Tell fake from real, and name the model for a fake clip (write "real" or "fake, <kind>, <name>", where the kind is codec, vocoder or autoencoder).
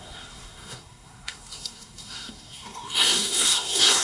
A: fake, codec, SNAC